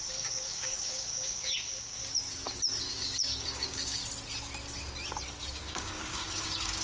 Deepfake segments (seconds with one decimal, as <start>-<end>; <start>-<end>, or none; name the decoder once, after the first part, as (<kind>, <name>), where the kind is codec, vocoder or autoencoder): 0.0-2.0 (codec, DAC); 2.8-4.0; 5.5-6.8